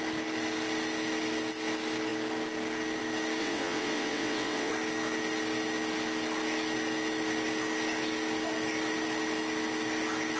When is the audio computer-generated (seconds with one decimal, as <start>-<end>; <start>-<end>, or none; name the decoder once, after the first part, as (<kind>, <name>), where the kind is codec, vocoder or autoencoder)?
3.4-4.7 (vocoder, WaveNeXt)